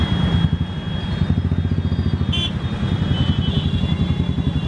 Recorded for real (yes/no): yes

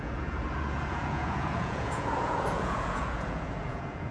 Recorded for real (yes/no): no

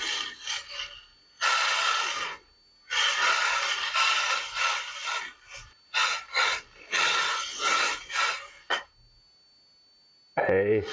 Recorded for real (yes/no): yes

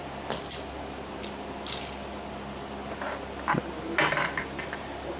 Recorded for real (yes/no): yes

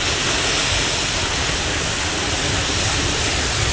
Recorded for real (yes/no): yes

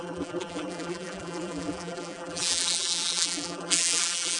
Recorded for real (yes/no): no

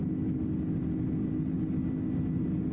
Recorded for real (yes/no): yes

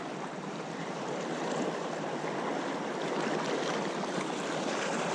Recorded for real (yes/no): yes